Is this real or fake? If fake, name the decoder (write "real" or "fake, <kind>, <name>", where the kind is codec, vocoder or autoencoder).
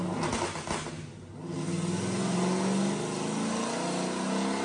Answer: real